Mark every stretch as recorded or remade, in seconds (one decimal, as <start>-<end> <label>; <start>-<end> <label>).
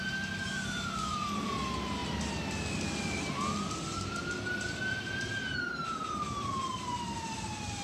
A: 0.0-7.8 recorded